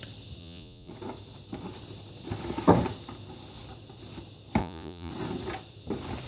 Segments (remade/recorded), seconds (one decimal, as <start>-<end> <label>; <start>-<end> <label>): 0.0-0.4 recorded; 0.4-0.9 remade; 0.9-4.6 recorded; 4.6-5.1 remade; 5.1-6.3 recorded